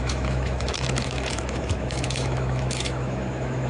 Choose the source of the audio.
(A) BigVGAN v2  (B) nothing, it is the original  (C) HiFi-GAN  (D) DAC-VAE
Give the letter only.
D